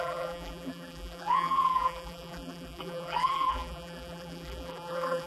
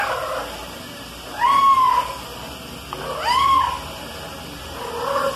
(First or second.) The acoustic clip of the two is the second